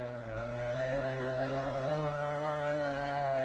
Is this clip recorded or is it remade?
remade